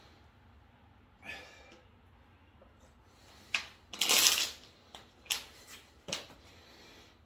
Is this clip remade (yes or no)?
no